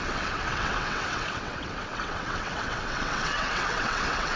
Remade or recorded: remade